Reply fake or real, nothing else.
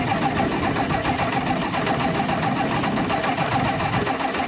real